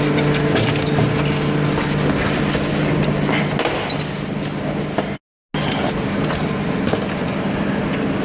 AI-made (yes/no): no